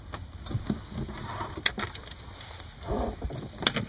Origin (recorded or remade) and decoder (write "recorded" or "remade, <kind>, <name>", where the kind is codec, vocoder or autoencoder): recorded